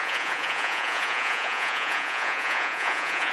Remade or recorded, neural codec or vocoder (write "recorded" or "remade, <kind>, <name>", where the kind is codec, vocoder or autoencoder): remade, vocoder, Vocos